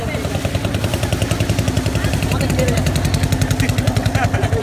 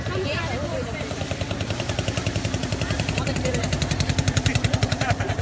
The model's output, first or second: second